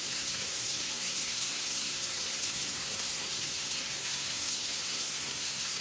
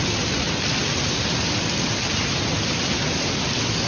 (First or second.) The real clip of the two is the second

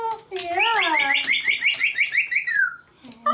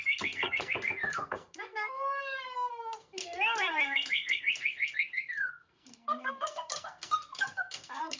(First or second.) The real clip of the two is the first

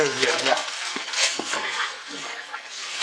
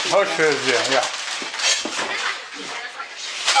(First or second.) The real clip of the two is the second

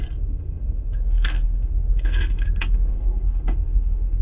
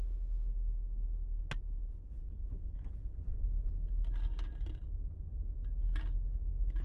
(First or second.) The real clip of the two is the second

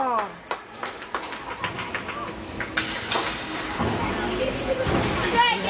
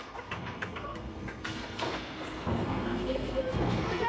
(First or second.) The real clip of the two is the first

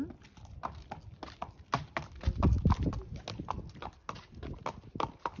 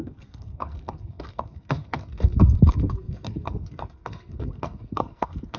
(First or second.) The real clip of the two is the first